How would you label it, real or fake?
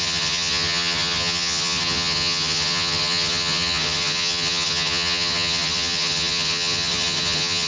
fake